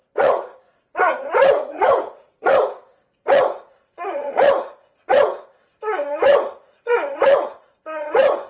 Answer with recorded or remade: remade